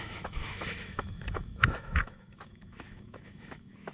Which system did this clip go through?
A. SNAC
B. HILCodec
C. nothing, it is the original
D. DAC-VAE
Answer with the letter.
D